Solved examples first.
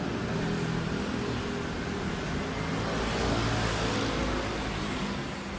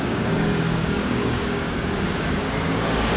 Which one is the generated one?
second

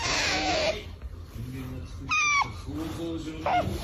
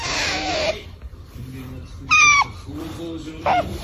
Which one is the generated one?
second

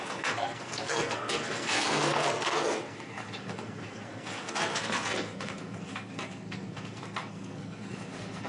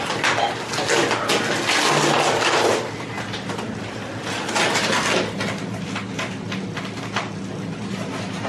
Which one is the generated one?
first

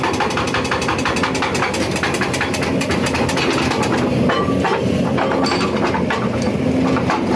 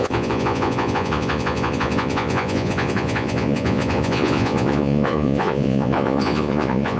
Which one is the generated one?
second